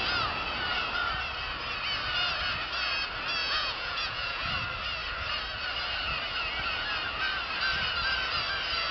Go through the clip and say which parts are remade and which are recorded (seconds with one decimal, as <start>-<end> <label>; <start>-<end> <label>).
0.0-3.4 recorded; 3.4-4.5 remade; 4.5-8.9 recorded